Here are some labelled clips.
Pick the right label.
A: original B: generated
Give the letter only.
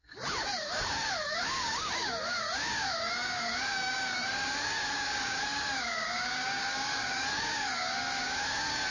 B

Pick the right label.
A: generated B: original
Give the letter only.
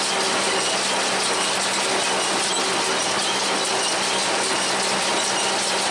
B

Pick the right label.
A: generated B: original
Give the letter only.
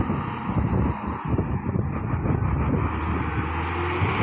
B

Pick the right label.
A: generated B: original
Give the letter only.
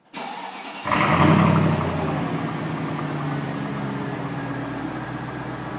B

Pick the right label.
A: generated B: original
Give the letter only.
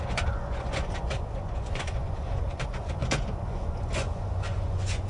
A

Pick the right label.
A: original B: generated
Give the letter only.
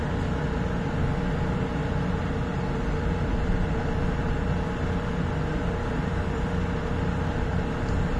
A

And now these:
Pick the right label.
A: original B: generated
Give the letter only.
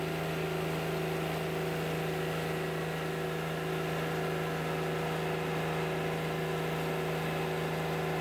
A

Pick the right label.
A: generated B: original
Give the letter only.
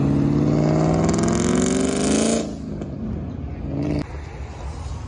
B